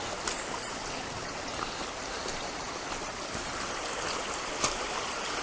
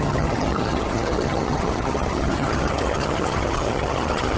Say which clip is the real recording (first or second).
first